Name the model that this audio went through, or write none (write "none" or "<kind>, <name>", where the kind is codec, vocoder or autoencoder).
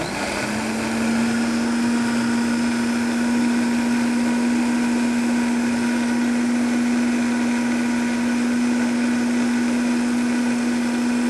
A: none